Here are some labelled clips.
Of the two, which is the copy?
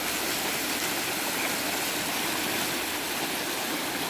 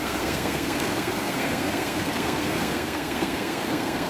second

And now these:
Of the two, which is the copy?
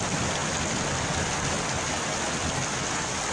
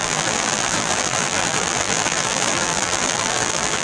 second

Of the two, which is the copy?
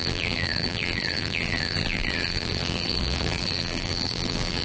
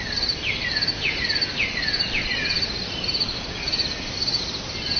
first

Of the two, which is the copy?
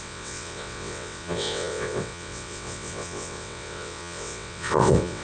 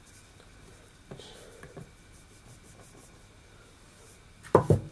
first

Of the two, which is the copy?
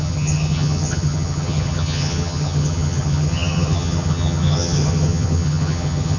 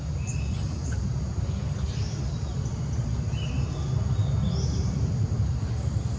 first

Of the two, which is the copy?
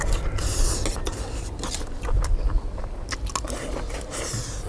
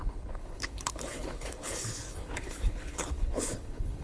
second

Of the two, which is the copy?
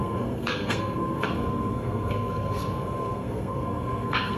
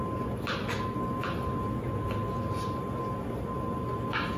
first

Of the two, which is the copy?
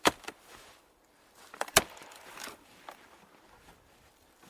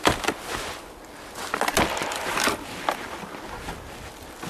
first